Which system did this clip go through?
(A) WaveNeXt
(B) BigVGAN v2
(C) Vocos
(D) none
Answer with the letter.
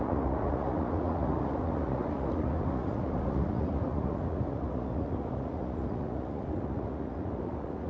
C